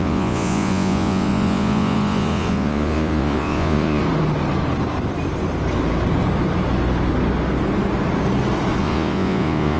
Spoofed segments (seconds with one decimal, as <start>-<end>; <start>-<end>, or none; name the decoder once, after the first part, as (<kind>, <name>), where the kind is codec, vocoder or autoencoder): 0.0-4.0 (vocoder, Vocos); 8.8-9.8